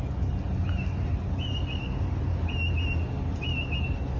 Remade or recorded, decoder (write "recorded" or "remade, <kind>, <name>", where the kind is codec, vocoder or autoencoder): recorded